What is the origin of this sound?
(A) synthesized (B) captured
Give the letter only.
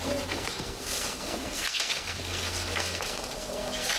A